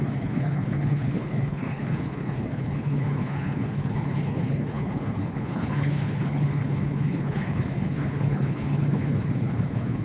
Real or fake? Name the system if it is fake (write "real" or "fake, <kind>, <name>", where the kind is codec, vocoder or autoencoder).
fake, codec, HILCodec